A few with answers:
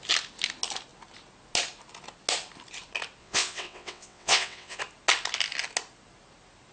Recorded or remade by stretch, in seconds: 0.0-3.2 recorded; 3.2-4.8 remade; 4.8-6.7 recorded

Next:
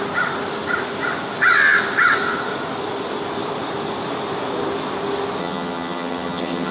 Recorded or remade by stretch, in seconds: 0.0-5.4 recorded; 5.4-6.7 remade

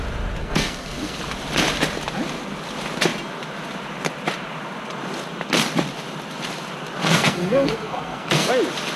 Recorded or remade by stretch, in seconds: 0.0-0.4 recorded; 0.4-1.2 remade; 1.2-7.0 recorded; 7.0-8.5 remade; 8.5-9.0 recorded

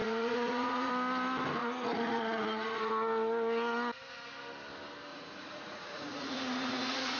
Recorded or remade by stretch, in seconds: 0.0-0.9 remade; 0.9-1.6 recorded; 1.6-2.9 remade; 2.9-5.1 recorded; 5.1-7.2 remade